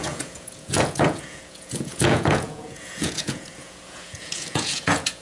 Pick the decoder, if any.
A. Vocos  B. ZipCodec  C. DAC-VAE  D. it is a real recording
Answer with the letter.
A